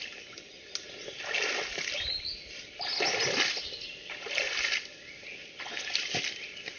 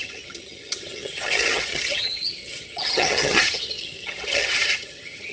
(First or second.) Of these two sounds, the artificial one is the second